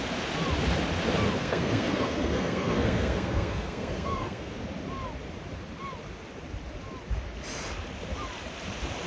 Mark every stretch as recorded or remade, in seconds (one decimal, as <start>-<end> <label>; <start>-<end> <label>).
0.0-1.4 recorded; 1.4-4.5 remade; 4.5-9.1 recorded